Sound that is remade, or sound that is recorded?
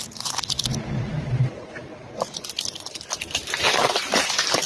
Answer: remade